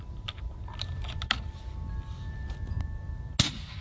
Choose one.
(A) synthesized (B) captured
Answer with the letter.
B